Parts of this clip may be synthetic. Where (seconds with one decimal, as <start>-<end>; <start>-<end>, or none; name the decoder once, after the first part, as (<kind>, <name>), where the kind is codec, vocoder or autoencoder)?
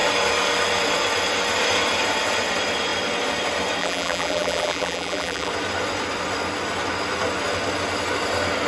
3.8-5.5 (vocoder, BigVGAN v2)